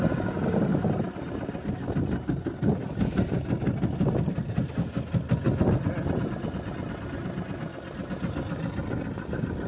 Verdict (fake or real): real